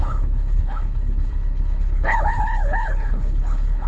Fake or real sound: fake